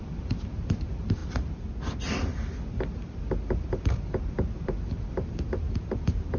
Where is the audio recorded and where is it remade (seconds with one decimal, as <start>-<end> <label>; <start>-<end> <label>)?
0.0-6.4 recorded